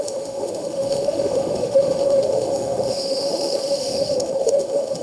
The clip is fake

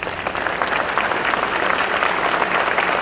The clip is real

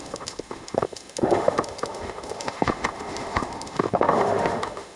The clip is fake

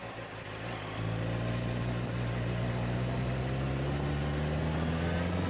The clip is real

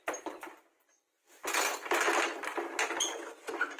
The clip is real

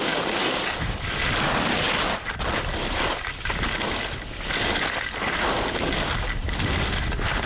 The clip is real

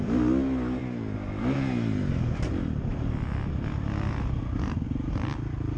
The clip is real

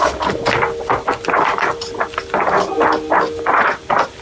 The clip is real